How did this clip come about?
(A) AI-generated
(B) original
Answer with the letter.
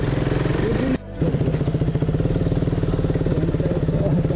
A